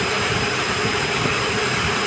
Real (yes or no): no